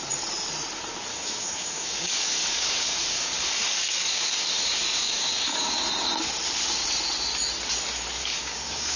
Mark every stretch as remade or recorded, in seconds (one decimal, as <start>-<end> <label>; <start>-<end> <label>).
0.0-1.1 recorded; 1.1-5.8 remade; 5.8-8.2 recorded; 8.2-9.0 remade